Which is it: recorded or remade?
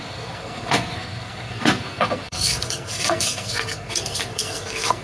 remade